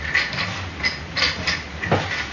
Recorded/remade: remade